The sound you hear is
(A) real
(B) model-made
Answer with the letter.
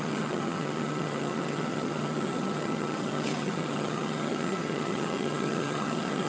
B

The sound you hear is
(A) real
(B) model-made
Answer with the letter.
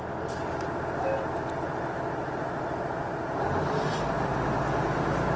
A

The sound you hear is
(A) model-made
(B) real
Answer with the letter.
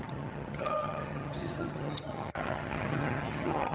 A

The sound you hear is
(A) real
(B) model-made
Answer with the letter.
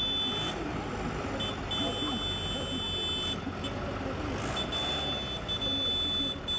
A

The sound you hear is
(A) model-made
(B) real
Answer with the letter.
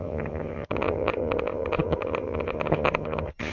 A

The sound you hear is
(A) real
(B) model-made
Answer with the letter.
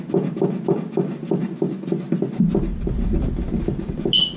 A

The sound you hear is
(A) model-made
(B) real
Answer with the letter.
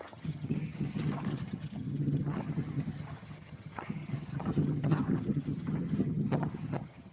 A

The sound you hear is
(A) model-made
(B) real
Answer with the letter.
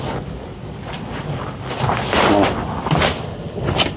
B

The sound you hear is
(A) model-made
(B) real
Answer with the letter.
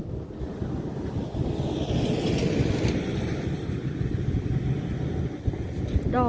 B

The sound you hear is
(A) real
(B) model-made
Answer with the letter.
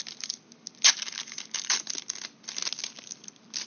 A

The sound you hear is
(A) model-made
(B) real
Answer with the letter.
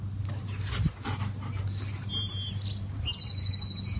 B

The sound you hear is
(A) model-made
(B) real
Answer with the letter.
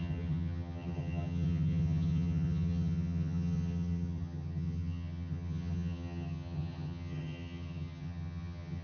A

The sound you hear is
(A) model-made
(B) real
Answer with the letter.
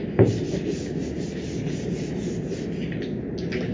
B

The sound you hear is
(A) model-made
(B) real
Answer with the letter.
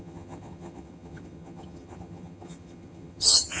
A